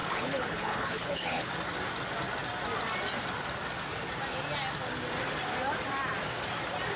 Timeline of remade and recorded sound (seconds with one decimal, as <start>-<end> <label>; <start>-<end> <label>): 0.0-1.5 remade; 1.5-7.0 recorded